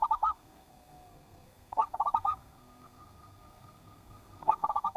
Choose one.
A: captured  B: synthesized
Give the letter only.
B